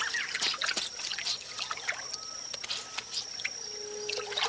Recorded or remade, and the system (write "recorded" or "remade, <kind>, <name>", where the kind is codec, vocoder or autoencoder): recorded